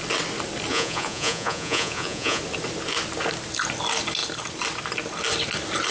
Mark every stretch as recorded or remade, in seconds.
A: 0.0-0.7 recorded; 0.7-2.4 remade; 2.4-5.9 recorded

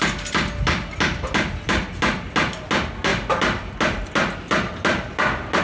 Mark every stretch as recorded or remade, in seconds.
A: 0.0-5.6 recorded